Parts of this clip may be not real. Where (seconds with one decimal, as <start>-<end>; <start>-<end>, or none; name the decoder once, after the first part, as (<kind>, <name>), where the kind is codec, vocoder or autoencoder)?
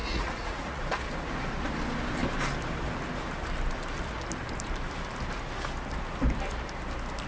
0.0-0.8 (vocoder, Vocos)